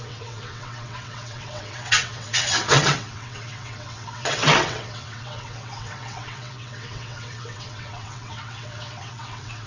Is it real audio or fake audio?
fake